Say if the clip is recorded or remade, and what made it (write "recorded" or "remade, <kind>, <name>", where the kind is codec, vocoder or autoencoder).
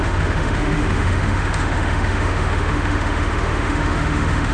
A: remade, autoencoder, DAC-VAE